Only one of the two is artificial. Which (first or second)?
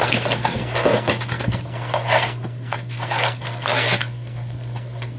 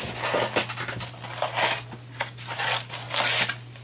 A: first